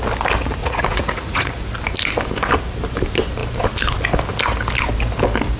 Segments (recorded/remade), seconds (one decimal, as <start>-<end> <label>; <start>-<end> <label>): 0.0-0.6 recorded; 0.6-1.7 remade; 1.7-5.6 recorded